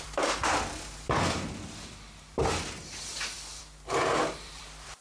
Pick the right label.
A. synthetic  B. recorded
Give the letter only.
A